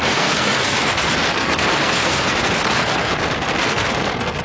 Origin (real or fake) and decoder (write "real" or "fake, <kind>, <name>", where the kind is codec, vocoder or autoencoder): fake, codec, SNAC